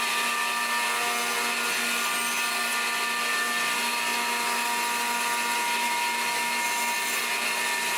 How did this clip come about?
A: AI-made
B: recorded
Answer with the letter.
B